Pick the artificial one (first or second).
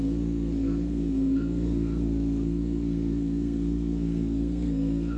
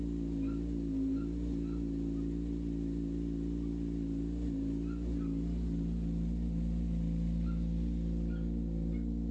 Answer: first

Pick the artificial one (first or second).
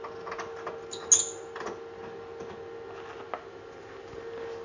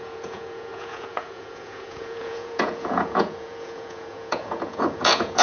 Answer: second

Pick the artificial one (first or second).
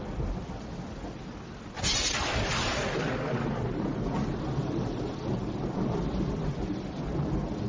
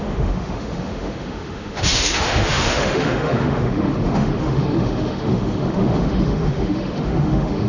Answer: second